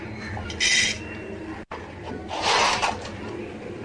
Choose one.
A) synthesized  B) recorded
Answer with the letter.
B